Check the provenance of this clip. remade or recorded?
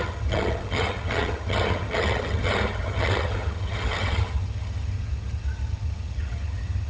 remade